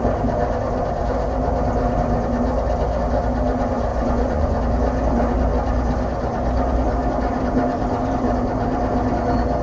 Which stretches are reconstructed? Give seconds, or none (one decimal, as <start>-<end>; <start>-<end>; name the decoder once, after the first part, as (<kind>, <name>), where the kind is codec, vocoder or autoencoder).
3.9-4.6 (vocoder, Vocos)